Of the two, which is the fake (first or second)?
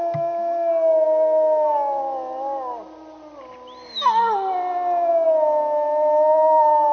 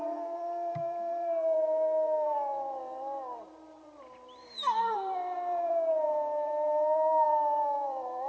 second